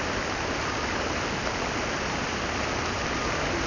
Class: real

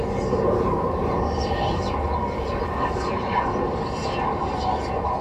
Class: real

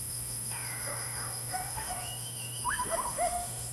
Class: fake